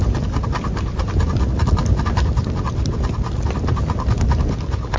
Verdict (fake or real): real